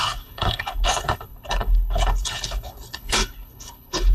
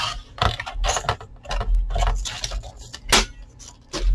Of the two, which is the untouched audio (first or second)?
second